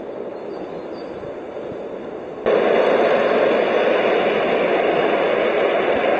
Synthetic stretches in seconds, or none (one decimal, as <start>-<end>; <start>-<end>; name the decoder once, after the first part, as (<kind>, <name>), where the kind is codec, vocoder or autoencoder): none